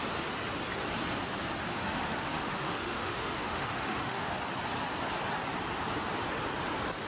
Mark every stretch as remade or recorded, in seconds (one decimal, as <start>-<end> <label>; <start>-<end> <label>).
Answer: 0.0-1.7 recorded; 1.7-4.3 remade; 4.3-7.1 recorded